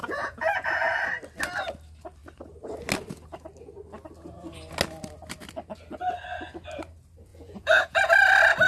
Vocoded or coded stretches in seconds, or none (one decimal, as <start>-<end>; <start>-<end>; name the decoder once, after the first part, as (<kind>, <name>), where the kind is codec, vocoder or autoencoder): 0.0-0.7 (vocoder, Vocos); 7.3-8.1